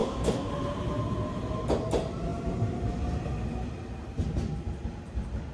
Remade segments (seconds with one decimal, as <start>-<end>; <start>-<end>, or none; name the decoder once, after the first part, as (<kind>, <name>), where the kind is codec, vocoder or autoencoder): 0.0-0.5 (codec, DAC)